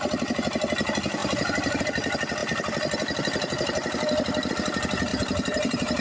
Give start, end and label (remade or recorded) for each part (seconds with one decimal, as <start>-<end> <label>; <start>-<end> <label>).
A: 0.0-1.2 recorded; 1.2-1.8 remade; 1.8-5.1 recorded; 5.1-6.0 remade